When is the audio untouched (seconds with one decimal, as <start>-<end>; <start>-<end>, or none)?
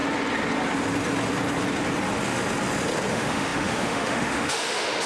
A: 0.0-3.1